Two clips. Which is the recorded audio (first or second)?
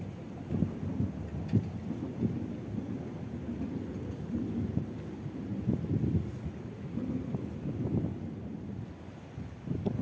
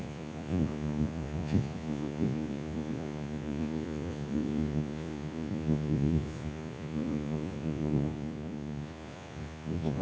first